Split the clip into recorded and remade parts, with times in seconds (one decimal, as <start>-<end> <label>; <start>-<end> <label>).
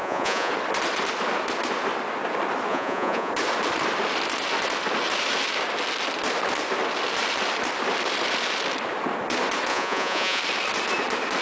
0.0-0.5 remade; 0.5-2.7 recorded; 2.7-3.3 remade; 3.3-9.7 recorded; 9.7-10.4 remade; 10.4-11.4 recorded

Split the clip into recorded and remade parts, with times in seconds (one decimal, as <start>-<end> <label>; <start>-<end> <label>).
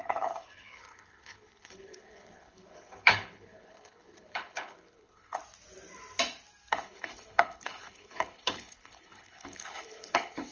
0.0-5.4 remade; 5.4-6.7 recorded; 6.7-10.5 remade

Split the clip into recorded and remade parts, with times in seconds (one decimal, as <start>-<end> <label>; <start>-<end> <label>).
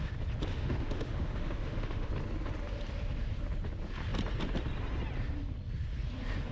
0.0-0.5 recorded; 0.5-2.1 remade; 2.1-6.5 recorded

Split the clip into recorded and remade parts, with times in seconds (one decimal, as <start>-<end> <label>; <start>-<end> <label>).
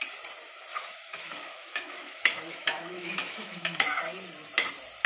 0.0-0.7 recorded; 0.7-3.8 remade; 3.8-5.1 recorded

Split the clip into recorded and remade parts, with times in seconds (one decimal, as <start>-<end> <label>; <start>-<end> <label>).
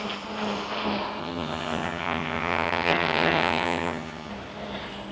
0.0-1.2 recorded; 1.2-4.3 remade; 4.3-5.1 recorded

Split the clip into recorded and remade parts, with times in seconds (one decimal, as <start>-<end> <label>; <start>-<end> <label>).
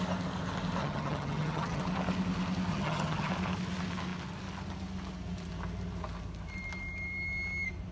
0.0-0.8 recorded; 0.8-1.8 remade; 1.8-2.7 recorded; 2.7-3.3 remade; 3.3-7.9 recorded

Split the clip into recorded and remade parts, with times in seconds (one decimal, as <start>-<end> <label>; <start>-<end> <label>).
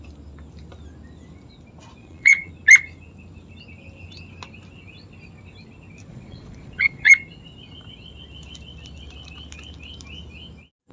0.0-2.0 recorded; 2.0-2.5 remade; 2.5-6.1 recorded; 6.1-7.1 remade; 7.1-10.9 recorded